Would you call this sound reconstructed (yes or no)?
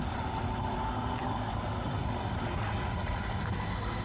no